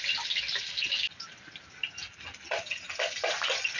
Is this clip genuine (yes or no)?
yes